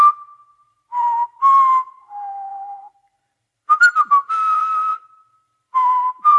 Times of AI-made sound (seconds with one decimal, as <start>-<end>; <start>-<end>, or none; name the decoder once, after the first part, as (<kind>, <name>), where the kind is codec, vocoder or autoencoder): 0.6-1.4 (vocoder, BigVGAN v2); 2.5-6.4